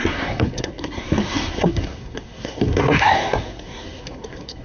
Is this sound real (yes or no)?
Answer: no